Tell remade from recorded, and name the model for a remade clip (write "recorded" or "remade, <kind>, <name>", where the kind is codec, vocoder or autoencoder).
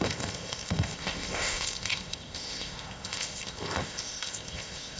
remade, codec, ZipCodec